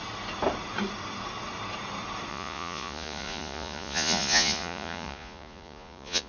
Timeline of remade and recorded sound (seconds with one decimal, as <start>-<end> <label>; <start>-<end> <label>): 0.0-2.3 recorded; 2.3-6.3 remade